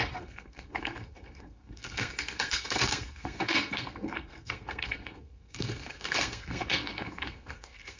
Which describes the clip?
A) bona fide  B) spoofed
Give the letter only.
B